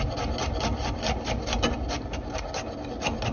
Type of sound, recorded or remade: recorded